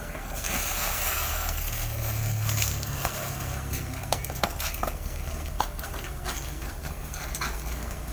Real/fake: fake